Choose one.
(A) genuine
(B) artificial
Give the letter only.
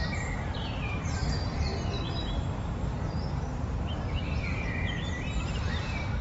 B